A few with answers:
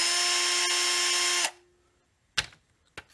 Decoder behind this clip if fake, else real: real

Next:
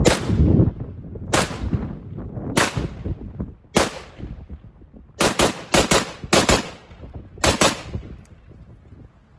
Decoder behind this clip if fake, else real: real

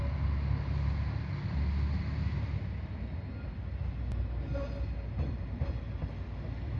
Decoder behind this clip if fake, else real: real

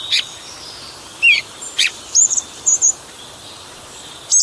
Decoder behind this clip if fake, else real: fake, vocoder, BigVGAN v2